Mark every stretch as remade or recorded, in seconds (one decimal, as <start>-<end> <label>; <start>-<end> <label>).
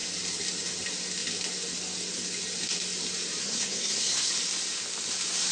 0.0-3.4 recorded; 3.4-4.3 remade; 4.3-5.5 recorded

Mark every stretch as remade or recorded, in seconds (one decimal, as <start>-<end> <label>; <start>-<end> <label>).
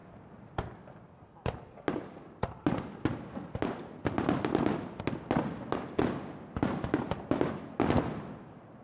0.0-8.8 recorded